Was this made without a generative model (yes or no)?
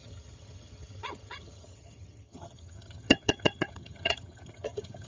no